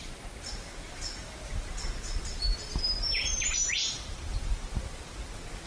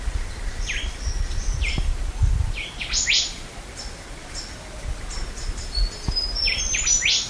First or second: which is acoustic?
second